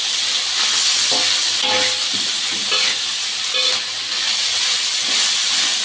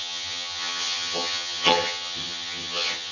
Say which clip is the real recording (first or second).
first